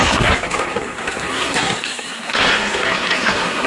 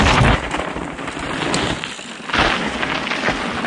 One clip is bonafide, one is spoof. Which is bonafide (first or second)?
second